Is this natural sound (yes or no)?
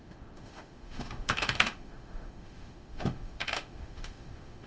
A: no